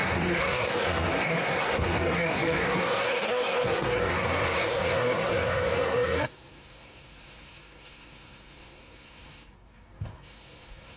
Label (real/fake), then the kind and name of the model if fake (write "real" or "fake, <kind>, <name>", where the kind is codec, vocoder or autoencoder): fake, codec, SNAC